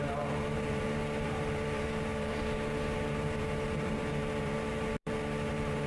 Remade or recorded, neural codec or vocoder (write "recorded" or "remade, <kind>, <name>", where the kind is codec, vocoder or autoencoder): remade, vocoder, BigVGAN v2